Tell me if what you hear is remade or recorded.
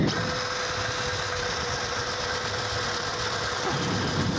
recorded